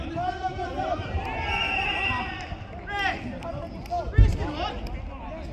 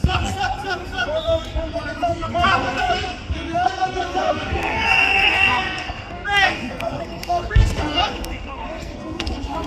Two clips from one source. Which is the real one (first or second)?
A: first